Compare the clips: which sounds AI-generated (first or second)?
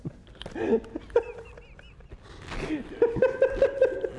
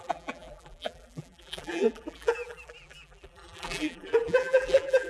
second